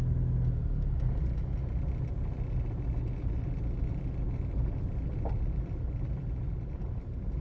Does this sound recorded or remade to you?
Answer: recorded